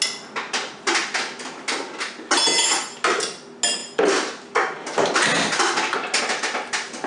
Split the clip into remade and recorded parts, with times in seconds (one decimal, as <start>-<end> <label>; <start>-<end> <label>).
0.0-7.1 recorded